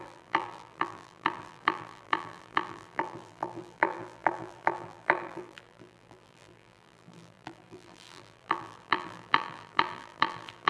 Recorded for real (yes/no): no